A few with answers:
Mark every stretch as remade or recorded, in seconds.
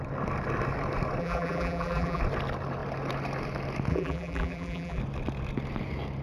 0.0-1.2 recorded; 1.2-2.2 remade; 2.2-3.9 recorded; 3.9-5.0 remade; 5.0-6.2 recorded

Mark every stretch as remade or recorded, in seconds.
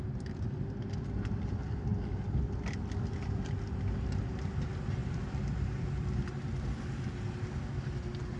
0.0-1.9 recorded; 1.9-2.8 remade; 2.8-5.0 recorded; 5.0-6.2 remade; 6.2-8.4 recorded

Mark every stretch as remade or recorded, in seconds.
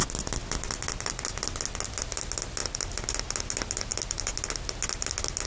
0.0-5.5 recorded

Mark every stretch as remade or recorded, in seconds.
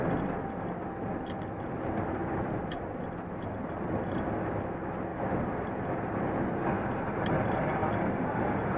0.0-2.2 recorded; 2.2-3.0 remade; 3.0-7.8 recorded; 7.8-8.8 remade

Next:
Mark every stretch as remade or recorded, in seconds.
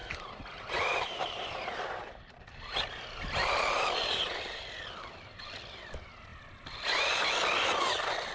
0.0-4.8 remade; 4.8-8.3 recorded